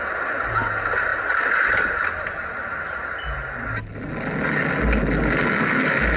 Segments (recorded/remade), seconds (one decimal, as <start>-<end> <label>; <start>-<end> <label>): 0.0-6.2 recorded